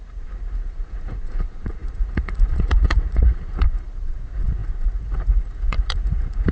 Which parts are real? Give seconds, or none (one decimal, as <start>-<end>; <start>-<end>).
none